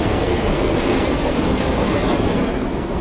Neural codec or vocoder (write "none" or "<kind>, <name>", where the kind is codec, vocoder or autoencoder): codec, SNAC